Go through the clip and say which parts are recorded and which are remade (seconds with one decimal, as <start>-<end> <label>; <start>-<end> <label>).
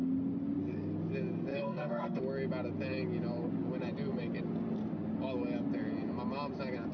0.0-1.5 recorded; 1.5-2.2 remade; 2.2-6.9 recorded